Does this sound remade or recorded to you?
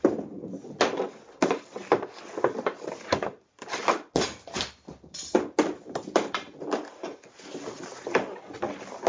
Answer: recorded